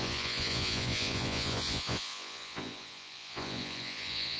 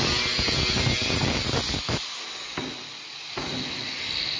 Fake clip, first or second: first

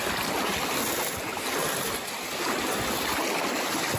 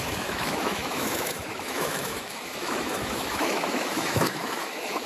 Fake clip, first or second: second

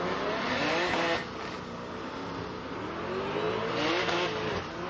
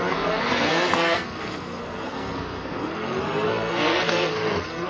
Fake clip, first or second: second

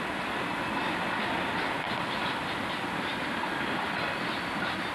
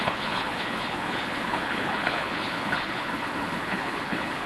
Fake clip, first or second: second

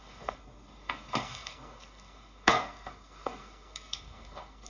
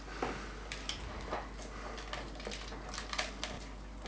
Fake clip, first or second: first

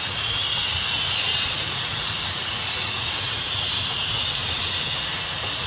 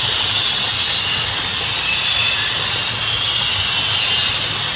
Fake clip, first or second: first